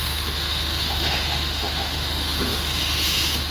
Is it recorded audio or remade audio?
remade